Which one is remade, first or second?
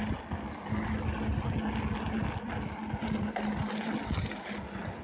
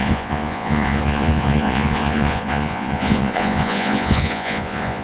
second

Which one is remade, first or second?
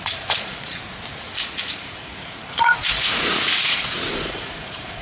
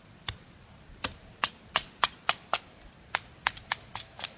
first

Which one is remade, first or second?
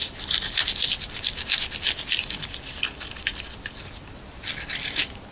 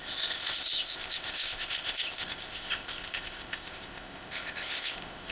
second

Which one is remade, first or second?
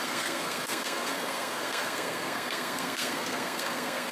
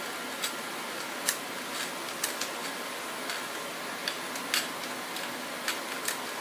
first